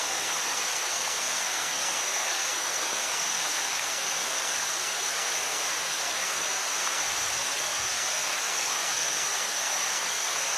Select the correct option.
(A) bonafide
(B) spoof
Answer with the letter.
B